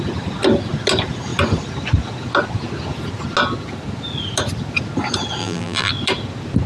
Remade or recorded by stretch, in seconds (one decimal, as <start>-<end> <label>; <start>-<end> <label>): 0.0-5.4 recorded; 5.4-5.9 remade; 5.9-6.7 recorded